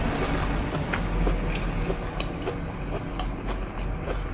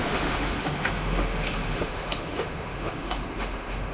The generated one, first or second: second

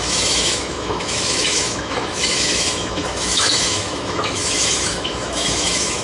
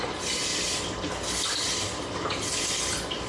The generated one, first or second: first